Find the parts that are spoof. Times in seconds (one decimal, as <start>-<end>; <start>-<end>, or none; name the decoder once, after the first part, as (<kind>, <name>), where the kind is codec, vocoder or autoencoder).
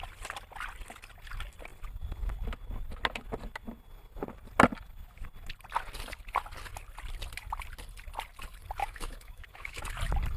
8.8-9.8 (autoencoder, DAC-VAE)